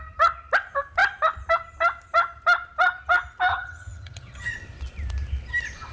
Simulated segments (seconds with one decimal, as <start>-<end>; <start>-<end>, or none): 3.5-4.5